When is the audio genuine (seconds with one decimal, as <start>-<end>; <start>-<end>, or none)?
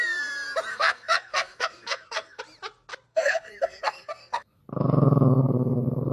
0.0-0.7; 2.4-3.1; 4.6-5.4